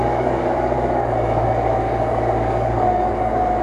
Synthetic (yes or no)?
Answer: yes